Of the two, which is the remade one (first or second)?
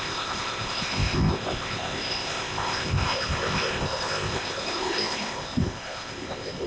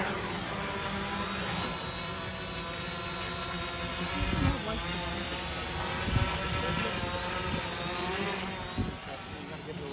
first